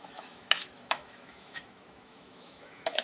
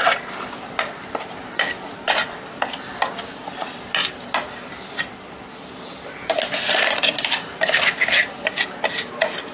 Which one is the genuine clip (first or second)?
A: second